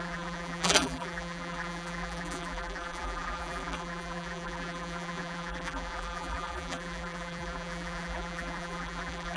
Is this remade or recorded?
remade